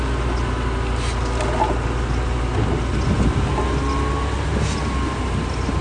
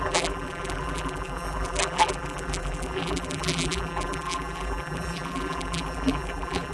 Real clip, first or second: first